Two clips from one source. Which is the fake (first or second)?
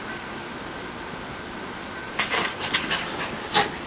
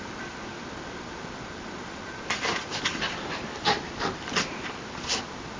second